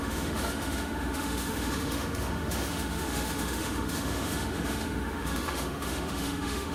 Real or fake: fake